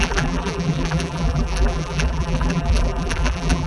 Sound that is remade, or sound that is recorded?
remade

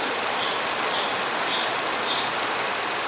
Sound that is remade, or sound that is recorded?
recorded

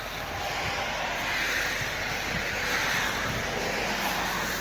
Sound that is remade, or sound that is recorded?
recorded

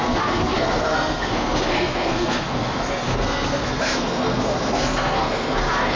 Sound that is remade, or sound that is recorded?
remade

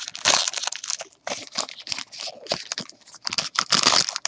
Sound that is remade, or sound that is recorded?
recorded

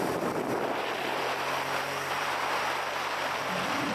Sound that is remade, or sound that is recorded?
remade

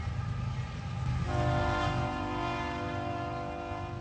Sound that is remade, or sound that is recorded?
recorded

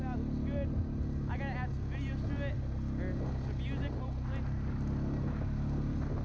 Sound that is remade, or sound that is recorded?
recorded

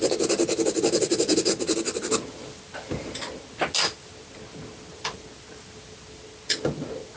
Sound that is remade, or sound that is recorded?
recorded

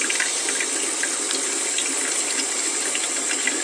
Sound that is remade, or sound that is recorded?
recorded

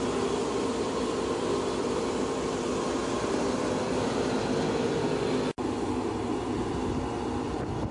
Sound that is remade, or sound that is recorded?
recorded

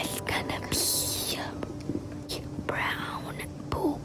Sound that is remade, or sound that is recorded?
recorded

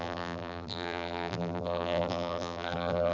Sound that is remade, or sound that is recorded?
remade